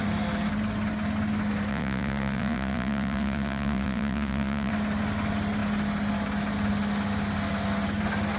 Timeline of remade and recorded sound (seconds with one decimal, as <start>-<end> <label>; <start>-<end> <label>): 0.0-1.7 recorded; 1.7-4.7 remade; 4.7-8.4 recorded